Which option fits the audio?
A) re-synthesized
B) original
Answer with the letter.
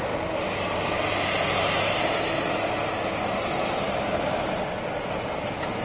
B